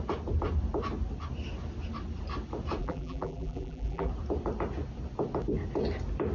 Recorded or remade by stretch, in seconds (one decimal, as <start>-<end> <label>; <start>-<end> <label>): 0.0-2.8 recorded; 2.8-4.1 remade; 4.1-6.3 recorded